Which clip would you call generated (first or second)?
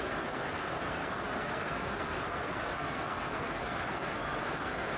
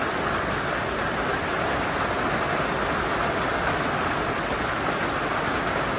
first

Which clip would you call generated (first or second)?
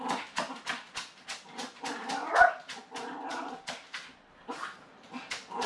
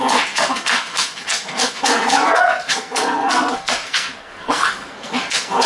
second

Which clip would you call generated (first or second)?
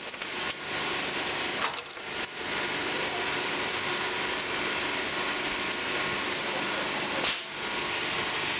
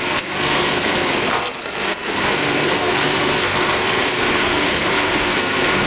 second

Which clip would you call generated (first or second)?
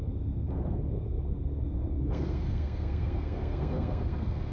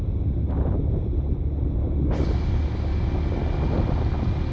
first